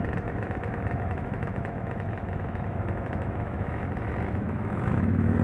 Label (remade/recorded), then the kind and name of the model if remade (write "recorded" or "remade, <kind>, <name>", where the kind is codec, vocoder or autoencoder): remade, autoencoder, DAC-VAE